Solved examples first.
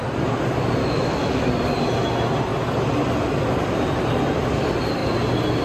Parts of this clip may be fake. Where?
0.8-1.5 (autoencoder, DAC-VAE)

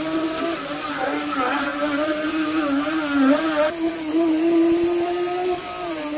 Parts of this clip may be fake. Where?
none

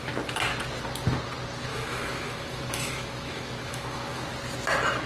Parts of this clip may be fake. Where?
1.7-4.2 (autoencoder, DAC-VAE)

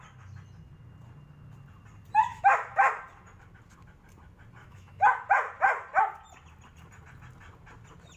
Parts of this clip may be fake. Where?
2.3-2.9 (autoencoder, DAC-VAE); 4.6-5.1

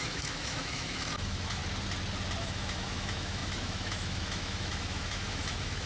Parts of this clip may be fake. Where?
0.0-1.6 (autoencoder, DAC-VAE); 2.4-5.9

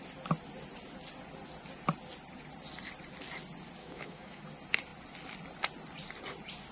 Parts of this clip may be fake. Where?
3.8-4.4 (autoencoder, DAC-VAE)

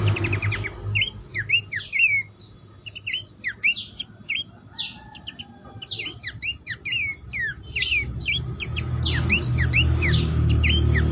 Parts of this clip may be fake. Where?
none

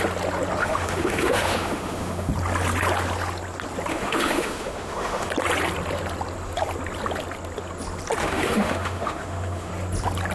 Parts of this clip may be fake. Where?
0.6-2.3 (autoencoder, DAC-VAE); 3.9-5.3; 8.2-9.7